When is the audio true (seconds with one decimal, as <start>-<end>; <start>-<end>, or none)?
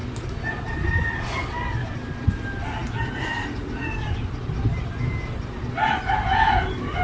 0.0-7.0